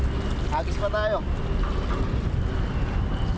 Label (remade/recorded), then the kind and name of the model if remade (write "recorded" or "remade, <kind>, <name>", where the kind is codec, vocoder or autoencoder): recorded